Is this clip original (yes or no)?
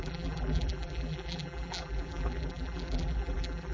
no